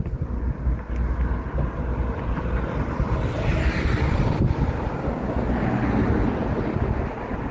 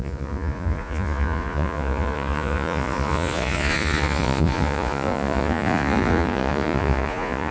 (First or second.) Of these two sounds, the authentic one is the first